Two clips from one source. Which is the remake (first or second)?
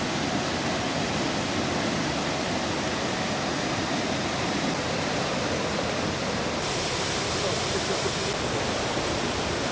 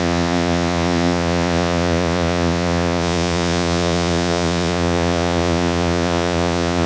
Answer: second